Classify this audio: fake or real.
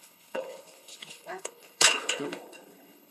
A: fake